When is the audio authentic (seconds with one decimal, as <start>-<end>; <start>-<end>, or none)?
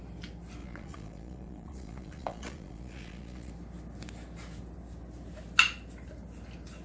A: 0.0-0.6; 3.5-6.8